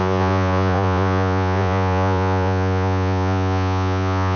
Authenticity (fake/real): fake